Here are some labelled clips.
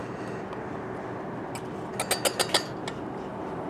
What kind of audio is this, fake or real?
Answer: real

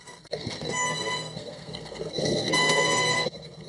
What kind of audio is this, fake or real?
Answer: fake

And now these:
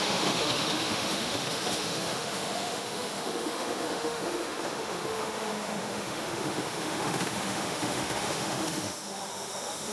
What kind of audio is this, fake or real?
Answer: fake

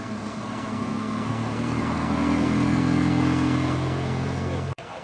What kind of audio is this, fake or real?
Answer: fake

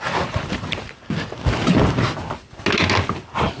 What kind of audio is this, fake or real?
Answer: real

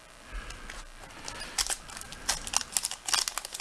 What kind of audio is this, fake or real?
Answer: real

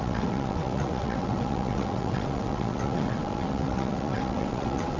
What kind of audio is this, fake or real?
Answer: fake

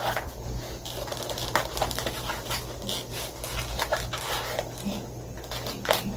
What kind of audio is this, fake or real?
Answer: real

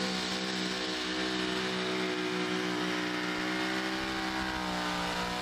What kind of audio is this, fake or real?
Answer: real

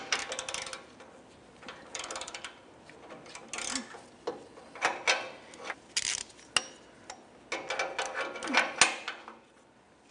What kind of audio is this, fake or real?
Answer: real